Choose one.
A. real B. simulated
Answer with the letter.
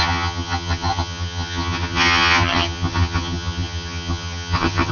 B